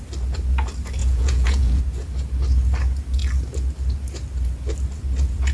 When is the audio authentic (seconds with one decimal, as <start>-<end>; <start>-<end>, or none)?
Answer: 0.0-1.0; 1.8-5.5